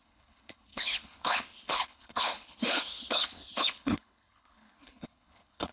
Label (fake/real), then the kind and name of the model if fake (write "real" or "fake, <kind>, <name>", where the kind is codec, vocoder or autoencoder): fake, codec, HILCodec